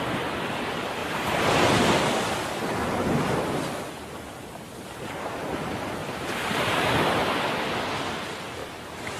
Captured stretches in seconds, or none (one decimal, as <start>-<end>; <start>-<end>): 0.0-1.0; 2.4-2.8; 3.8-6.0; 7.0-8.6